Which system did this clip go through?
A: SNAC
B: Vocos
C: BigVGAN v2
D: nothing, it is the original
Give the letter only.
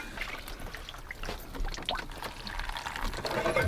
D